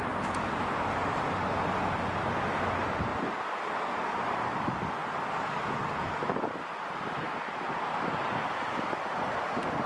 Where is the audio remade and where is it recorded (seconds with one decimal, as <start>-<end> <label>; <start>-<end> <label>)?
0.0-9.9 recorded